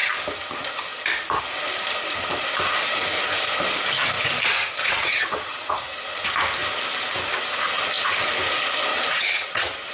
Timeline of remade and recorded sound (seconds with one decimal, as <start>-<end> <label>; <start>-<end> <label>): 0.0-4.8 recorded; 4.8-5.7 remade; 5.7-8.9 recorded; 8.9-9.9 remade